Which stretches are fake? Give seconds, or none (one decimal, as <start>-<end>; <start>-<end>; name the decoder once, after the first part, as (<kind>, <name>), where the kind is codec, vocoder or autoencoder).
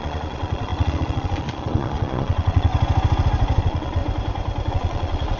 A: 0.0-2.7 (vocoder, Vocos); 3.6-4.0; 4.7-5.4